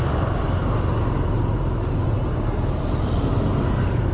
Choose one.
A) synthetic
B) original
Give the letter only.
B